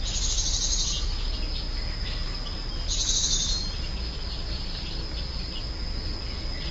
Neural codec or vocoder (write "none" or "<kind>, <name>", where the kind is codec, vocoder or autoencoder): none